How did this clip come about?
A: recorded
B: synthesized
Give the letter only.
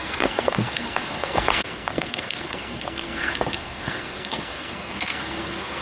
B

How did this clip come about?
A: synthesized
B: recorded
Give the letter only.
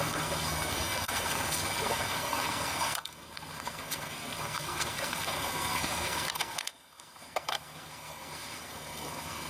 A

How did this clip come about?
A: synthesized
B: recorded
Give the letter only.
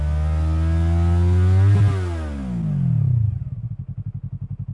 B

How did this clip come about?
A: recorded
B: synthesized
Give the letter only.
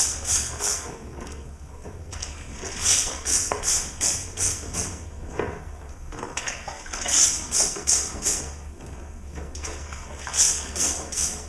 B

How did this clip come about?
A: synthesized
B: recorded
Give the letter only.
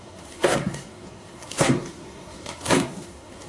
A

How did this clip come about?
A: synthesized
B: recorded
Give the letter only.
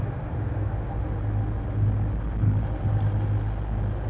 B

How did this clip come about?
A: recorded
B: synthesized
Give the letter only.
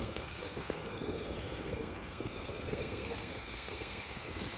B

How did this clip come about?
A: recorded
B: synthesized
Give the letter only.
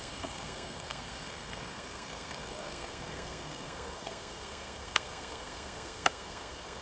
B